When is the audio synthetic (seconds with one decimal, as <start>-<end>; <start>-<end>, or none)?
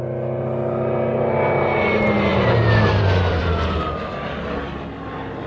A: none